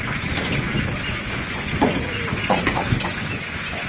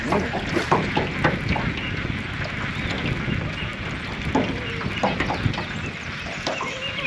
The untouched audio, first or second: second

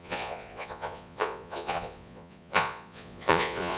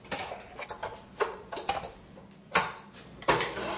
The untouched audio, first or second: second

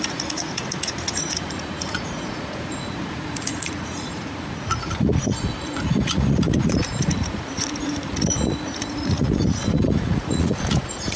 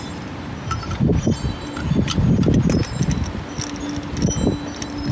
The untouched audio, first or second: second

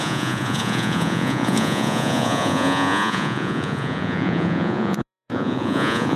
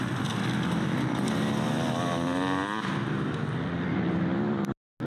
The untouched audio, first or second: second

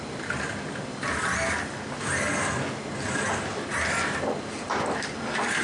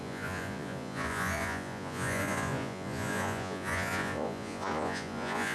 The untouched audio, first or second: first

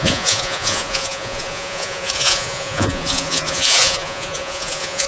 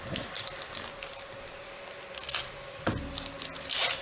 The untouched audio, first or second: second